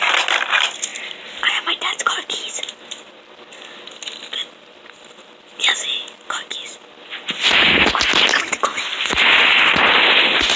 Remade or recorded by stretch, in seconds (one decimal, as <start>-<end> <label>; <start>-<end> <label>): 0.0-10.6 recorded